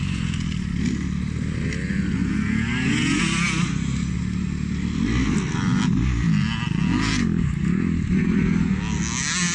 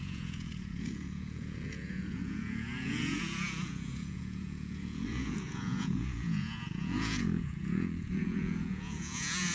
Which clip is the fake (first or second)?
second